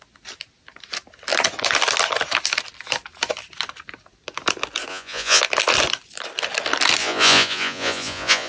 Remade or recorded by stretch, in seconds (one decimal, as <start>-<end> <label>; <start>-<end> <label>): 0.0-4.9 recorded; 4.9-5.4 remade; 5.4-7.0 recorded; 7.0-8.5 remade